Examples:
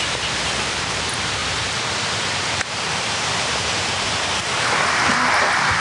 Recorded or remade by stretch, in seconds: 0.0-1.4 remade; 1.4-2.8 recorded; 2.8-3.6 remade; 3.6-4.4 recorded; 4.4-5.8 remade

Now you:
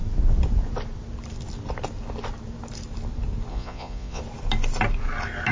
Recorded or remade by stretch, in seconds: 0.0-3.5 recorded; 3.5-4.2 remade; 4.2-5.5 recorded

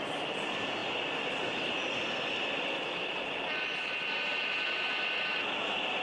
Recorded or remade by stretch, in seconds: 0.0-6.0 recorded